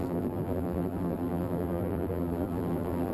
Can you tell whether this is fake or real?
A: fake